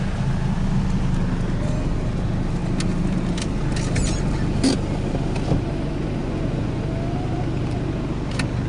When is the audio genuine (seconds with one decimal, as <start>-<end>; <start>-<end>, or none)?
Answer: 0.0-6.2; 6.8-8.7